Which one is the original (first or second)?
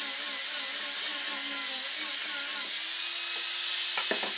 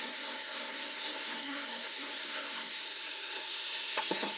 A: first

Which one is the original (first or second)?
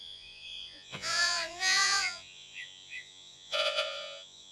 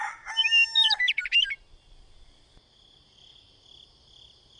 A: second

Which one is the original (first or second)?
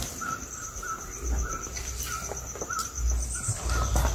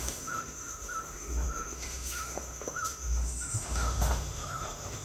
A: first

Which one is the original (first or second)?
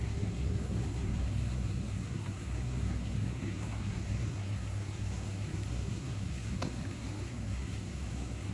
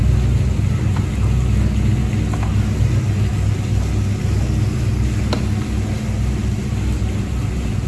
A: second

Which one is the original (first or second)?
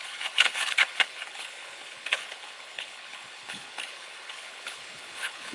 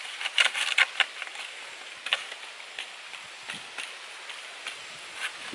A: second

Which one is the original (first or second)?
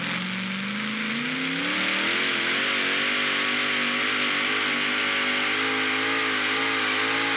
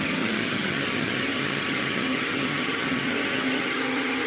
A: first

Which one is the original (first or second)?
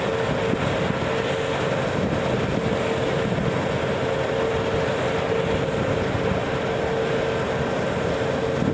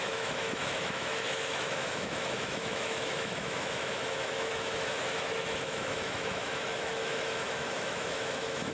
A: first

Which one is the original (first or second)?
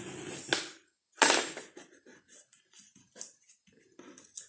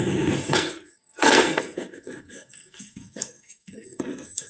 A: first